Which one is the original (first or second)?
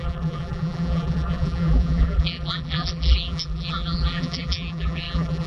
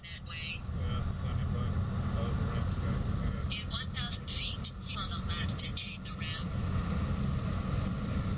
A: second